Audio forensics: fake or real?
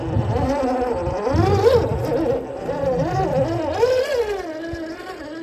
real